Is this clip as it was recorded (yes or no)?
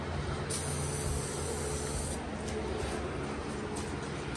yes